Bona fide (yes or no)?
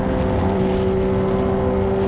yes